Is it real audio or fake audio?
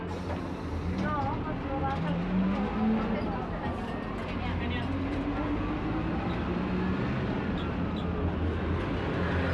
real